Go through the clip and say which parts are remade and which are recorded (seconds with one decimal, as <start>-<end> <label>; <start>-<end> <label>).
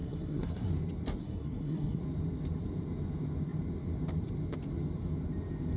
0.0-0.7 remade; 0.7-1.2 recorded; 1.2-2.0 remade; 2.0-5.8 recorded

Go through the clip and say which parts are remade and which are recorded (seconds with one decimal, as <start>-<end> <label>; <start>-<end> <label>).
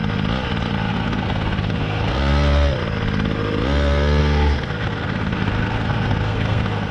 0.0-0.9 recorded; 0.9-2.2 remade; 2.2-4.2 recorded; 4.2-6.9 remade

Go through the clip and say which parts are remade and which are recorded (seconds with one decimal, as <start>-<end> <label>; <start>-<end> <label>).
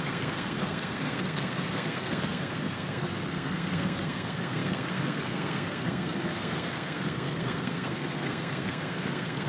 0.0-9.5 remade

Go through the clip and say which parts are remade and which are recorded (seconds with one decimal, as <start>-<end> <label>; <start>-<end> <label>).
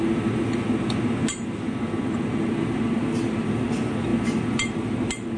0.0-5.4 recorded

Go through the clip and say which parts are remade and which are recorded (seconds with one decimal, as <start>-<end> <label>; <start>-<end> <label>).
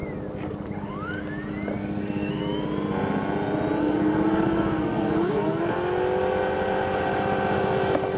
0.0-1.8 recorded; 1.8-2.4 remade; 2.4-3.8 recorded; 3.8-5.6 remade; 5.6-8.2 recorded